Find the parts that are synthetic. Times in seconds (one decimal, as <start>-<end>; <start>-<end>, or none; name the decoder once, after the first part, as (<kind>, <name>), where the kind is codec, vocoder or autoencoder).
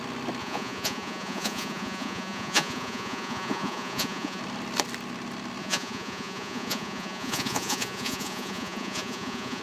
0.4-4.4 (vocoder, Vocos); 5.6-9.6